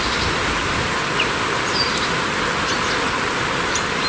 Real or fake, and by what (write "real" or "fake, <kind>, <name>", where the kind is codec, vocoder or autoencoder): real